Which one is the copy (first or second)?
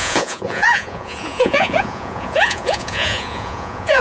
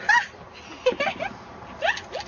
first